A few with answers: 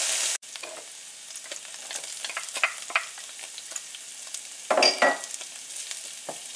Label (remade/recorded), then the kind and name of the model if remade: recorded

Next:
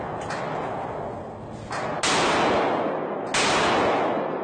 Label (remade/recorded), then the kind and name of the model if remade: recorded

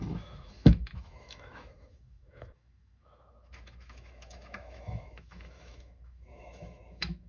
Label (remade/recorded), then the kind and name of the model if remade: remade, autoencoder, DAC-VAE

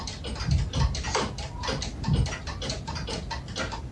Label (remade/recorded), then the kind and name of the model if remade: recorded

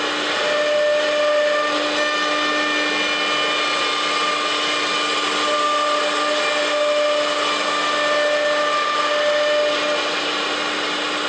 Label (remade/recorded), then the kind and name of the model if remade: recorded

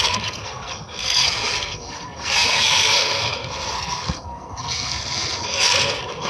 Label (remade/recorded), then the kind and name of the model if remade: remade, codec, SNAC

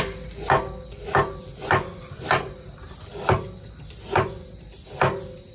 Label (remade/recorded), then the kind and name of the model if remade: recorded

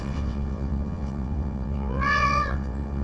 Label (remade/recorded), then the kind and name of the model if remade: remade, vocoder, WaveNeXt